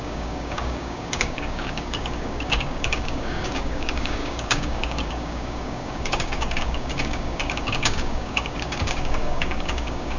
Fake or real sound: fake